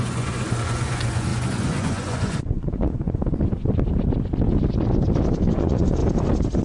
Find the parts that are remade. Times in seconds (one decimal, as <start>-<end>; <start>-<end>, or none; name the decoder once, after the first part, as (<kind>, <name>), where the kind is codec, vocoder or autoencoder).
0.0-3.2 (vocoder, Vocos); 5.5-6.0